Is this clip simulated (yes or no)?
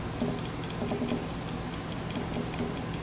no